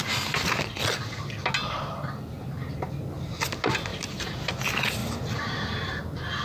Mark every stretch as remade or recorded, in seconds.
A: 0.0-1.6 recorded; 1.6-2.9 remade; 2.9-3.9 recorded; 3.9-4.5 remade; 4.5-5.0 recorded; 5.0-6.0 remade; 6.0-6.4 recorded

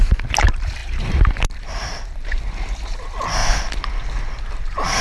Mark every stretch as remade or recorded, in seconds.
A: 0.0-3.4 remade; 3.4-4.5 recorded; 4.5-5.0 remade

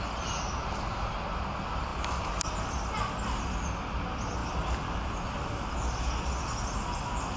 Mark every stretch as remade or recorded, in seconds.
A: 0.0-4.4 recorded; 4.4-5.8 remade; 5.8-7.4 recorded

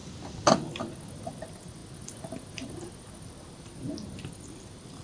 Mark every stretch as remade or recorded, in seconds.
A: 0.0-5.0 remade

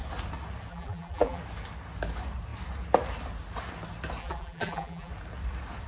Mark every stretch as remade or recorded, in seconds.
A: 0.0-0.7 recorded; 0.7-1.4 remade; 1.4-4.2 recorded; 4.2-5.1 remade; 5.1-5.9 recorded

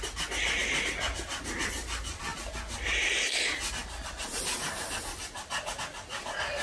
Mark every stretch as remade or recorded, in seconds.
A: 0.0-2.3 recorded; 2.3-3.4 remade; 3.4-3.8 recorded; 3.8-4.4 remade; 4.4-6.6 recorded

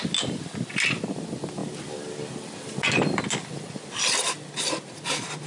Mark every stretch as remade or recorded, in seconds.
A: 0.0-5.5 recorded